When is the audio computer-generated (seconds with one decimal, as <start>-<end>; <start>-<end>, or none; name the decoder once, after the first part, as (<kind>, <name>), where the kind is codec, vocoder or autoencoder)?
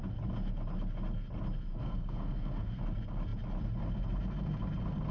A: 1.7-2.8 (codec, SNAC)